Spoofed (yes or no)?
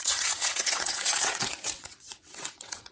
yes